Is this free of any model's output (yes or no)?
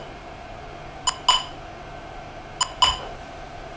yes